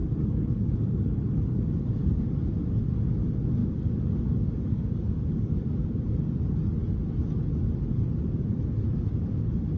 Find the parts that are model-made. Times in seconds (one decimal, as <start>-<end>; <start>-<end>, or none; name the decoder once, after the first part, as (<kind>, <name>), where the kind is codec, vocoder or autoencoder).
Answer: 0.0-3.0 (codec, DAC); 3.6-6.1